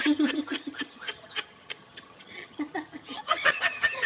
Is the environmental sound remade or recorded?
remade